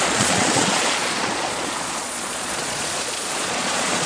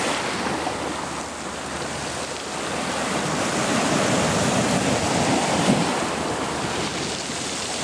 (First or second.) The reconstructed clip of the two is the first